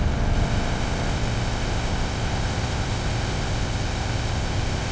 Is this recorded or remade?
remade